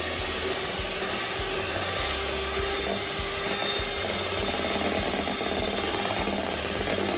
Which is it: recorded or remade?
recorded